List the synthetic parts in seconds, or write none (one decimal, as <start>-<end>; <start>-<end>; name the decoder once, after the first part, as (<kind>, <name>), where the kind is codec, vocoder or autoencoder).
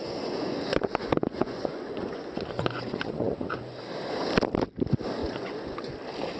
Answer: 0.0-3.8 (vocoder, Vocos); 5.2-5.9